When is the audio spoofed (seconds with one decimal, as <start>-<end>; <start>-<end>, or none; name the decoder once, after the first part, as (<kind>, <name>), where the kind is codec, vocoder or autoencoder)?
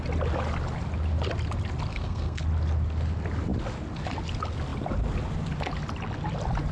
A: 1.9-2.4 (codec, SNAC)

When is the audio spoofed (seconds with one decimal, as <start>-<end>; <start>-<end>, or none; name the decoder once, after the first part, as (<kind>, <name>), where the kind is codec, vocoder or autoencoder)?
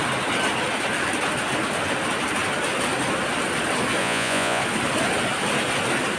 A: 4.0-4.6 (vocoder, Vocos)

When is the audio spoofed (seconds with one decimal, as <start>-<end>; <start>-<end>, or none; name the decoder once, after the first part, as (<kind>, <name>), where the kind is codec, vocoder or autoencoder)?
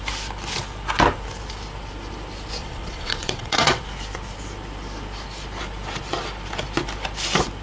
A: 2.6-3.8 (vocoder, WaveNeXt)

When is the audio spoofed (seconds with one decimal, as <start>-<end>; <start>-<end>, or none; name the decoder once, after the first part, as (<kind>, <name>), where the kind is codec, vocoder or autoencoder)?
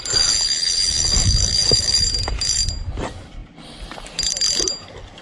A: none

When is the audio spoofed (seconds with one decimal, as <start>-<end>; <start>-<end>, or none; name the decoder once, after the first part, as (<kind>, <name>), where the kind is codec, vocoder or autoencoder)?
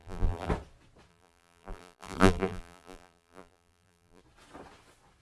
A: 0.0-0.5 (vocoder, BigVGAN v2); 1.1-4.2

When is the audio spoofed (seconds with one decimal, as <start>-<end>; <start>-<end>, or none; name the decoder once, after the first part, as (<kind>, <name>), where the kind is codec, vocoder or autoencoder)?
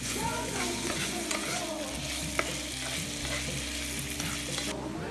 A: 0.0-1.6 (vocoder, Vocos)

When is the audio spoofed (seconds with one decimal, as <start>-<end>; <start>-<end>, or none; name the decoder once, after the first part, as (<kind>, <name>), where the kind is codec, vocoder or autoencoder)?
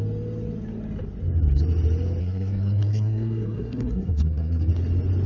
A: 2.2-4.7 (codec, SNAC)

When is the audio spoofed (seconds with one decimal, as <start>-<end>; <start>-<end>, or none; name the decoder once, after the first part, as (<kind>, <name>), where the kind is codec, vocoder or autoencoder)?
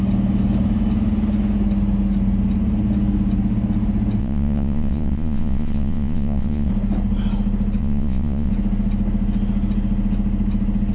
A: 4.2-6.7 (vocoder, Vocos); 7.8-8.5